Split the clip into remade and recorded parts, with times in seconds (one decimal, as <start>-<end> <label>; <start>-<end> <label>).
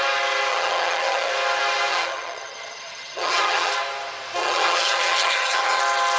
0.0-0.5 recorded; 0.5-1.3 remade; 1.3-1.9 recorded; 1.9-3.7 remade; 3.7-4.4 recorded; 4.4-5.8 remade; 5.8-6.2 recorded